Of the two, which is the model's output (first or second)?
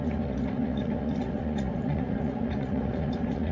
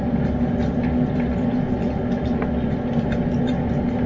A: first